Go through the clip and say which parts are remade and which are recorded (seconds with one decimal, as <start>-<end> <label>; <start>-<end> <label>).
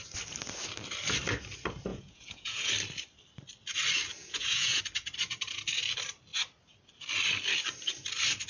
0.0-1.9 recorded; 1.9-2.7 remade; 2.7-4.2 recorded; 4.2-4.8 remade; 4.8-8.5 recorded